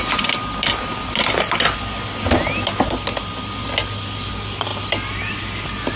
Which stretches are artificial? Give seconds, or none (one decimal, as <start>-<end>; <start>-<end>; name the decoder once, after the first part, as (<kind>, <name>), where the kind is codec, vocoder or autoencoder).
none

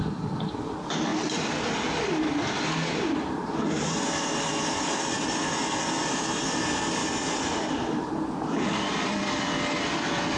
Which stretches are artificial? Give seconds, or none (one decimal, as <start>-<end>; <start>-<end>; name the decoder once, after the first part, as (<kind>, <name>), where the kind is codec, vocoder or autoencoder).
0.0-1.1 (vocoder, BigVGAN v2); 3.0-7.0; 7.7-10.4

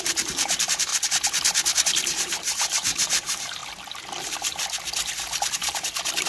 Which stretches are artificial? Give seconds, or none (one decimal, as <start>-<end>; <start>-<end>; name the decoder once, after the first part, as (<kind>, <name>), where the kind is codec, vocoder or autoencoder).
0.0-0.9 (vocoder, BigVGAN v2); 2.2-3.6

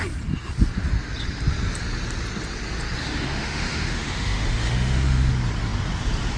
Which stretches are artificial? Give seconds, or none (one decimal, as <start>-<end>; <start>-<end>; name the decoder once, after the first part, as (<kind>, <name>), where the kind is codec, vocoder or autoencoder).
3.0-5.3 (autoencoder, DAC-VAE)

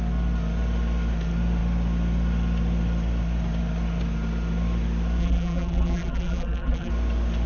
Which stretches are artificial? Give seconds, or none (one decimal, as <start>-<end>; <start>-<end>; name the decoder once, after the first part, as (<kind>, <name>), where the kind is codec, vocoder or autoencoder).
5.2-6.9 (vocoder, BigVGAN v2)

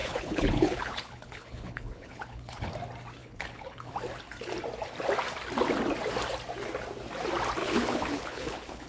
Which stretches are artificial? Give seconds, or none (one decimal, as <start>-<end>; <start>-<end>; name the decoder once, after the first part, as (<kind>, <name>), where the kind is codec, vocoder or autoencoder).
0.0-2.7 (codec, HILCodec); 3.2-3.9; 7.6-8.9

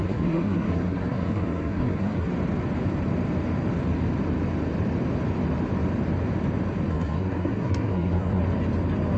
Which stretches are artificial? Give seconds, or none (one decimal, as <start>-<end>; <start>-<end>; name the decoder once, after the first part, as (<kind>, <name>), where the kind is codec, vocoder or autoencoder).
0.0-2.3 (codec, SNAC); 6.9-8.4